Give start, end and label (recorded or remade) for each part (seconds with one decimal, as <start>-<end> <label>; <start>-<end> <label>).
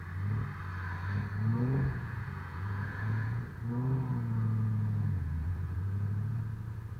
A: 0.0-1.5 recorded; 1.5-3.4 remade; 3.4-4.1 recorded; 4.1-6.4 remade; 6.4-7.0 recorded